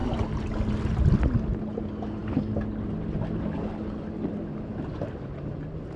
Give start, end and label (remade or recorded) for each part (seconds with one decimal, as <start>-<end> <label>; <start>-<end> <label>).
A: 0.0-6.0 recorded